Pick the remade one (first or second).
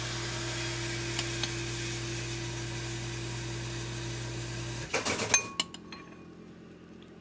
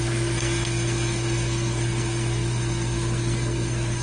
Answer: second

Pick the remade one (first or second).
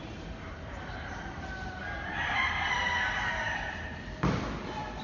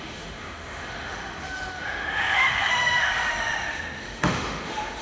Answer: second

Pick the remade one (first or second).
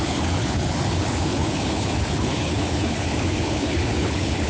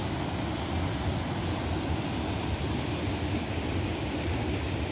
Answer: first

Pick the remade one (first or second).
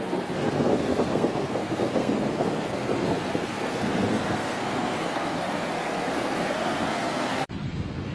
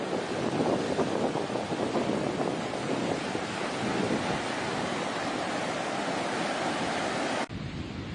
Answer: first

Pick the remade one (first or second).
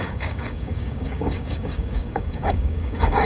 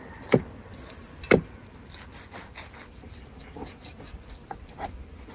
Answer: first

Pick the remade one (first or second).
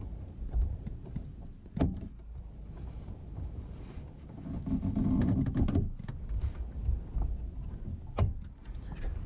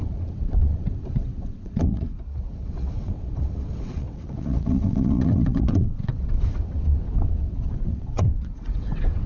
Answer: second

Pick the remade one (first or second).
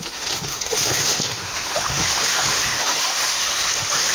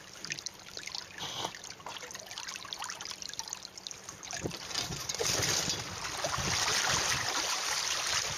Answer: first